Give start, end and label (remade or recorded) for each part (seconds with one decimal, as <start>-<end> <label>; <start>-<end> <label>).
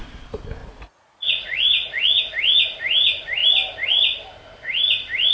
0.0-0.6 recorded; 0.6-2.2 remade; 2.2-5.3 recorded